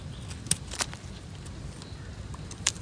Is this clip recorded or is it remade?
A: recorded